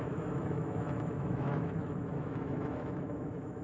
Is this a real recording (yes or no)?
no